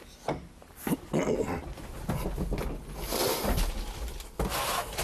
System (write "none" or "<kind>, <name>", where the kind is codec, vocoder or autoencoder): none